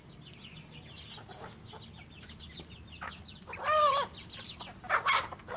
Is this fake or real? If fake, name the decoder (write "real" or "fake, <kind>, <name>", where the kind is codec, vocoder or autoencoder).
real